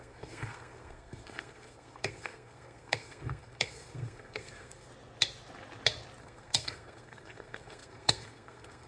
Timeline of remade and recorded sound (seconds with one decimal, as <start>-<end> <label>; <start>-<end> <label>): 0.0-4.9 remade; 4.9-6.2 recorded; 6.2-8.9 remade